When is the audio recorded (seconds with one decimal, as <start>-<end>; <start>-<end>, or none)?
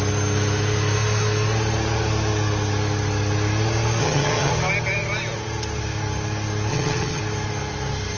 0.0-4.0; 4.5-6.7; 7.2-8.2